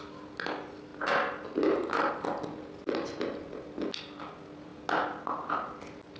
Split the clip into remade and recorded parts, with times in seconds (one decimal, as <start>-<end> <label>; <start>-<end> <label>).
0.0-6.2 recorded